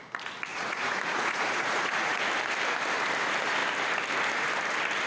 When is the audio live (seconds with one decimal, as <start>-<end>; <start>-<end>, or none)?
0.0-0.5; 2.2-5.1